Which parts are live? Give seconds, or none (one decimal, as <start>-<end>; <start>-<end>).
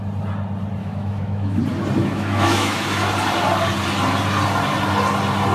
0.0-0.8; 1.6-2.0; 3.0-5.5